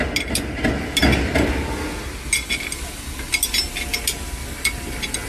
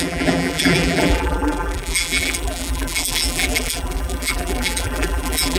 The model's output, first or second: second